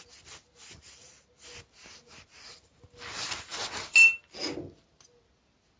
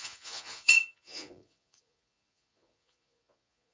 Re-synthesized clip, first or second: second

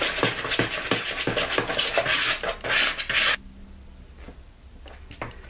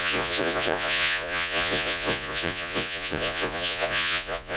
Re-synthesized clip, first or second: second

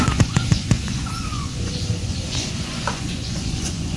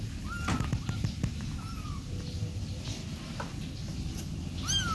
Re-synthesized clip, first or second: first